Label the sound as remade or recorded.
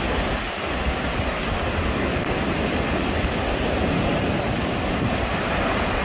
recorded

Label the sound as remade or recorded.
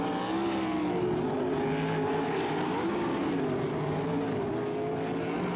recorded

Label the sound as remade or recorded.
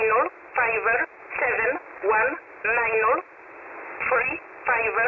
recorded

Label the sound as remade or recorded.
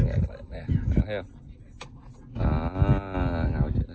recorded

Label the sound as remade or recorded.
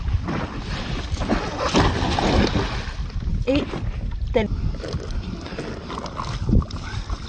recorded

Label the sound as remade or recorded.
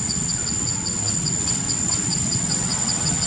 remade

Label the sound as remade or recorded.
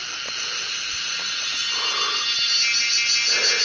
recorded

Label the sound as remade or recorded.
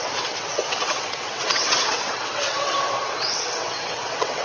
remade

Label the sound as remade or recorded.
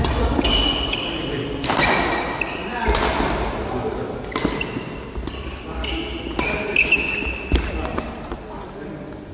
recorded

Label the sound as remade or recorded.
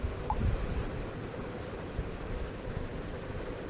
recorded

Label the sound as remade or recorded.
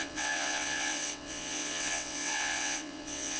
remade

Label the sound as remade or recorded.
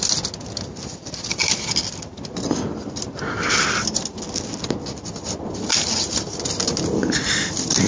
recorded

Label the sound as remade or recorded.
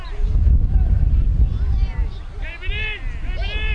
recorded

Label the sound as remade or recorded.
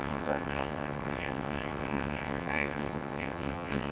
remade